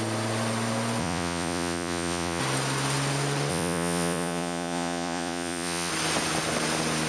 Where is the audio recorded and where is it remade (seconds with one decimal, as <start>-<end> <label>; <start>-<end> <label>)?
0.0-1.0 recorded; 1.0-2.4 remade; 2.4-3.5 recorded; 3.5-5.9 remade; 5.9-7.1 recorded